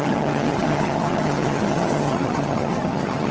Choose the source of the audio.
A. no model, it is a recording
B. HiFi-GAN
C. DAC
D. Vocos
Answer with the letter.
B